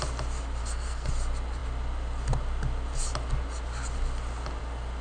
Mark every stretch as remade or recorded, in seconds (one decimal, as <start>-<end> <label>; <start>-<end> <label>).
0.0-0.6 recorded; 0.6-1.1 remade; 1.1-5.0 recorded